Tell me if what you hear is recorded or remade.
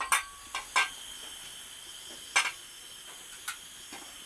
recorded